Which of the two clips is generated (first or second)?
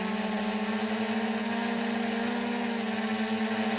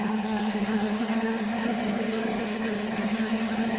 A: second